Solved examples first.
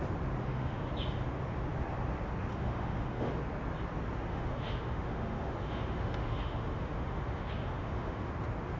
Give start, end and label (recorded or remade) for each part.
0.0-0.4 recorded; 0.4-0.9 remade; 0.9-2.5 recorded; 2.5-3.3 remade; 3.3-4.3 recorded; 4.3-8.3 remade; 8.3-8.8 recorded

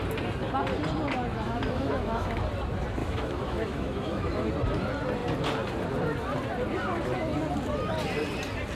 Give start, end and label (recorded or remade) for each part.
0.0-1.3 recorded; 1.3-2.4 remade; 2.4-3.0 recorded; 3.0-4.5 remade; 4.5-8.7 recorded

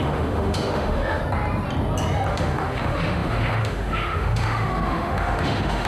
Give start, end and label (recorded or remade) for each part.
0.0-1.2 remade; 1.2-2.3 recorded; 2.3-5.9 remade